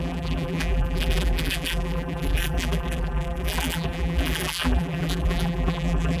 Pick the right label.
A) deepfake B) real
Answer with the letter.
A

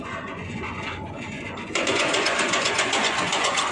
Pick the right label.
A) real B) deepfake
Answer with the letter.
B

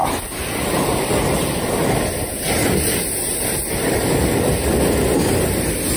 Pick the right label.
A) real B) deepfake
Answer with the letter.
A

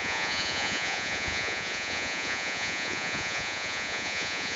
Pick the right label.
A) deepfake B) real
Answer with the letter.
A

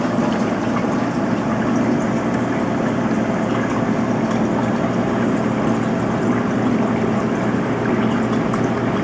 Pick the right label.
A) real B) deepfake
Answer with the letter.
A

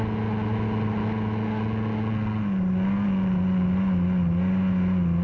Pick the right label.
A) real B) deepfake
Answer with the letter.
A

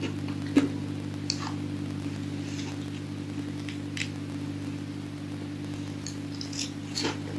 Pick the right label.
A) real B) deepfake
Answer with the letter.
A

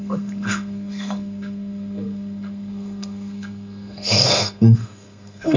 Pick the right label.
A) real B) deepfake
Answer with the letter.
B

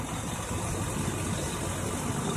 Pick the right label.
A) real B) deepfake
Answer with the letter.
A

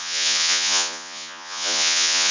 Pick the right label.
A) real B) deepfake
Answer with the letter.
B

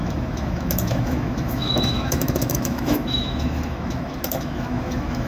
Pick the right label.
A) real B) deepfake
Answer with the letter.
B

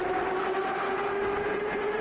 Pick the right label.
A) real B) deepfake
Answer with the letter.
A